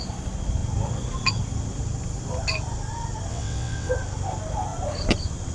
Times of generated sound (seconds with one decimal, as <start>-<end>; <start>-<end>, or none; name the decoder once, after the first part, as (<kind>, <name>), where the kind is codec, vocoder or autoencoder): 3.3-3.9 (vocoder, WaveNeXt)